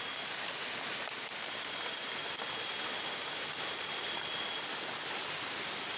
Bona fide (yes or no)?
yes